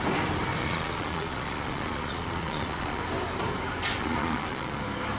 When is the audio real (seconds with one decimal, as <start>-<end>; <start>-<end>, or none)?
0.0-0.6; 3.0-4.0; 4.8-5.2